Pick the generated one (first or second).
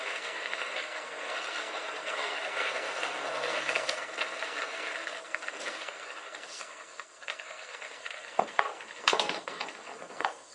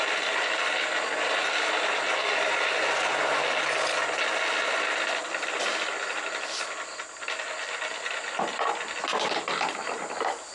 first